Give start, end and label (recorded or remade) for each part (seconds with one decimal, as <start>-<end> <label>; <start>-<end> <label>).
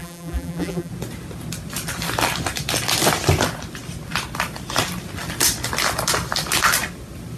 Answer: 0.0-0.9 remade; 0.9-7.4 recorded